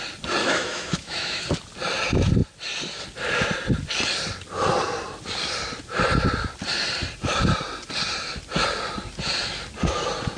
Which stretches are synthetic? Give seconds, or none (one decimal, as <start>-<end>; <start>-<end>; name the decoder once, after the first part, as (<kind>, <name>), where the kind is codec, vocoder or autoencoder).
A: 0.4-1.4 (autoencoder, DAC-VAE)